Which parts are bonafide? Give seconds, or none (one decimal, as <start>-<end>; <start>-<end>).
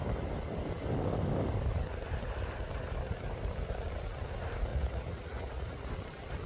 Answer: 0.0-4.7; 5.9-6.5